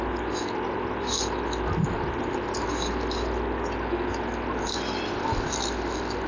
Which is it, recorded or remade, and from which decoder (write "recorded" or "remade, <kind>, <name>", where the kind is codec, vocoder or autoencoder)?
recorded